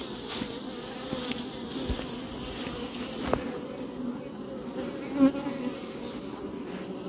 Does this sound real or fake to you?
real